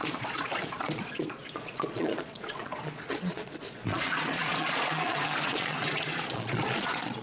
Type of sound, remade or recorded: remade